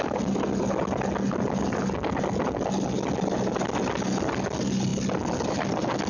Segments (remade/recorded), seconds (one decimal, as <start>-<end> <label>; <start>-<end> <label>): 0.0-6.1 recorded